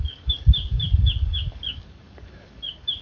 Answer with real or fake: fake